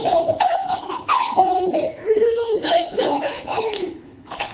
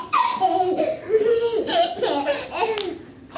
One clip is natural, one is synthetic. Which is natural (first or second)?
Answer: second